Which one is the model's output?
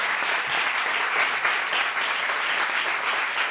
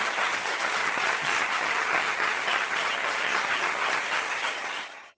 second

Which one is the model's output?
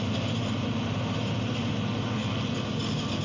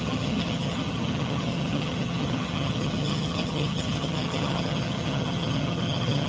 second